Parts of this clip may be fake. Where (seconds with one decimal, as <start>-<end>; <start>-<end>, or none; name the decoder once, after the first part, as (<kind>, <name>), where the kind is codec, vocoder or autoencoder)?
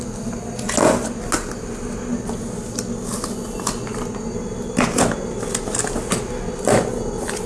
none